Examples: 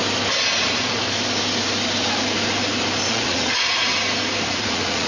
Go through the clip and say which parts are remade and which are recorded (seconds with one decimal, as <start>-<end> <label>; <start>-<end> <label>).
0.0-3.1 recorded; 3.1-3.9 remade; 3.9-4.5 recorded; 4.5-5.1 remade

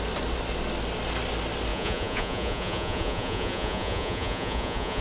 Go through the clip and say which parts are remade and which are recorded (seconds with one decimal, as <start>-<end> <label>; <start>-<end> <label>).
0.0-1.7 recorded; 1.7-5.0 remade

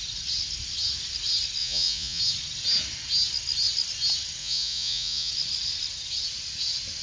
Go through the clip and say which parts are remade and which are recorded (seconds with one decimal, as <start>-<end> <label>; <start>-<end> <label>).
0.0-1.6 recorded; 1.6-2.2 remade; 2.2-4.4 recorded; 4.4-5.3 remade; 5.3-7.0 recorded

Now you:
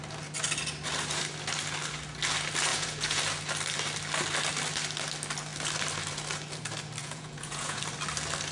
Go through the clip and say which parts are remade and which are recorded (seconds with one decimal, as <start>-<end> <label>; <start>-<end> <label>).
0.0-2.7 recorded; 2.7-3.2 remade; 3.2-7.0 recorded; 7.0-7.8 remade; 7.8-8.5 recorded